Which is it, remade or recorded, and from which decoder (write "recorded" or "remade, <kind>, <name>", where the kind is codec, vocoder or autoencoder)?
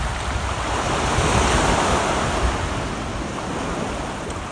recorded